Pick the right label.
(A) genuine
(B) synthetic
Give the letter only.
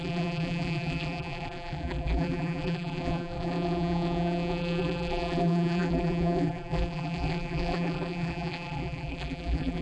B